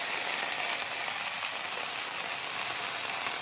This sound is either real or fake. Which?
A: real